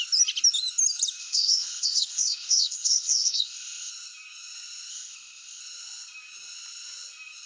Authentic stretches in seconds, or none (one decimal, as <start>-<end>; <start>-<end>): 0.0-1.2; 3.9-4.9; 5.6-7.5